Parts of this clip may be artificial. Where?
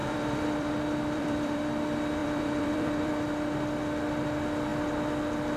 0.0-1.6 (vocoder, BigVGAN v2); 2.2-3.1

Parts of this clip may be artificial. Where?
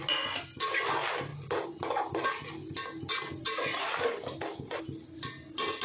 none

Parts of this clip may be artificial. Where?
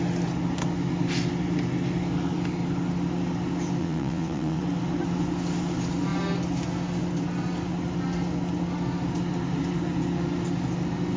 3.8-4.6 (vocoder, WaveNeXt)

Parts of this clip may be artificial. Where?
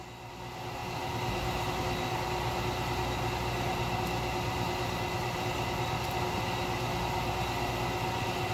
none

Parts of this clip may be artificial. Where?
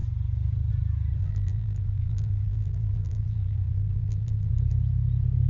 1.2-4.5 (vocoder, BigVGAN v2)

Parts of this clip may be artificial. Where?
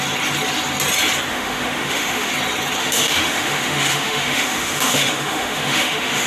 1.3-2.3 (autoencoder, DAC-VAE); 2.8-6.3